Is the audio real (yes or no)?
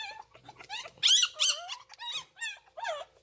yes